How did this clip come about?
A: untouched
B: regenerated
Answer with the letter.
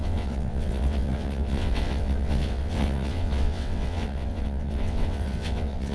B